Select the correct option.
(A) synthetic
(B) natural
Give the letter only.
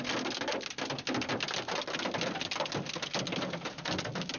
B